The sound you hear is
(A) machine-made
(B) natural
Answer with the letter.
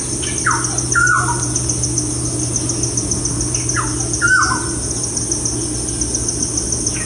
B